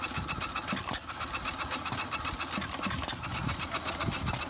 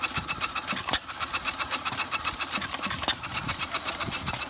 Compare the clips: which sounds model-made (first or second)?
second